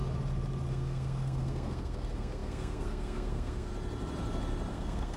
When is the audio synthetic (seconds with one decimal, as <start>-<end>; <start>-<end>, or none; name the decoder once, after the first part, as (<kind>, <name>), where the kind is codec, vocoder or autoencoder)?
0.7-3.7 (codec, SNAC); 4.7-5.2